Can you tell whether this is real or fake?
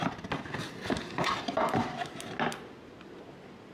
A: real